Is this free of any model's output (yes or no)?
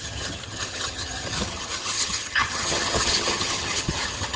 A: no